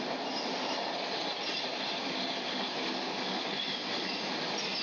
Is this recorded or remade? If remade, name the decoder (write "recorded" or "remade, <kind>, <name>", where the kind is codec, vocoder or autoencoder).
recorded